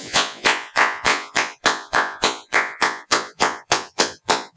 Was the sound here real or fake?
fake